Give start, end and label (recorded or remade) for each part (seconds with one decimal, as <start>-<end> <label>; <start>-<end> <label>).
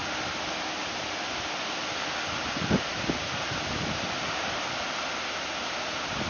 0.0-6.3 recorded